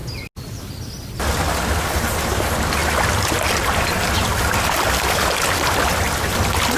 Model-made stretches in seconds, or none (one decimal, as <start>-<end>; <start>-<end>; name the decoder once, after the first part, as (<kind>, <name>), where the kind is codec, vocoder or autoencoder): none